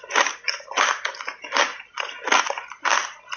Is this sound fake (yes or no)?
no